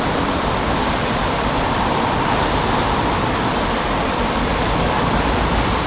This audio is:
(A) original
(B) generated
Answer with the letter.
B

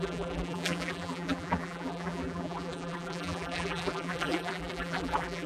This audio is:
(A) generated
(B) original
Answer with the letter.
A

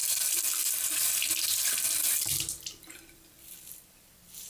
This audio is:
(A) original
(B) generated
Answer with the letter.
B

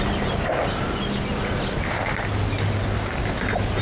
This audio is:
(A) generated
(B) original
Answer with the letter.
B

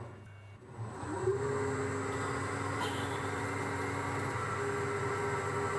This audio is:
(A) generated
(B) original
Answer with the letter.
B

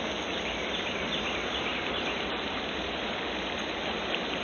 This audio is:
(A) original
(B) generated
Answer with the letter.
A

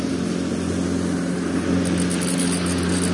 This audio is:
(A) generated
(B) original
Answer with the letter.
B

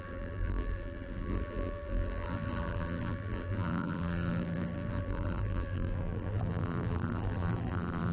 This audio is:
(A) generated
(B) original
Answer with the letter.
A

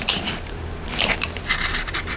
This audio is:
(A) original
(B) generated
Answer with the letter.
A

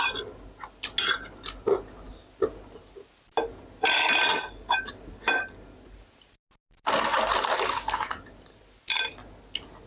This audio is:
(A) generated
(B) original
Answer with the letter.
B